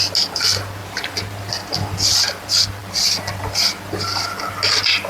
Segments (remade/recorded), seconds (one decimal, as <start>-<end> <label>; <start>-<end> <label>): 0.0-0.8 recorded; 0.8-1.5 remade; 1.5-5.1 recorded